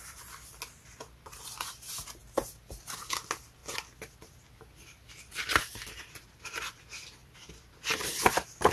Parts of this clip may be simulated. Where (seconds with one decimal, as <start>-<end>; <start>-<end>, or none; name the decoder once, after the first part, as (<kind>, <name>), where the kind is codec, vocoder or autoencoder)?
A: none